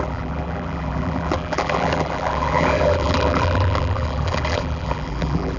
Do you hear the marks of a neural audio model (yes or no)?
yes